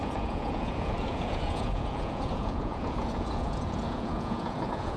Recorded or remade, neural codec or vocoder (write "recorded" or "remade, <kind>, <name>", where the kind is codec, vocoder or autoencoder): remade, vocoder, Vocos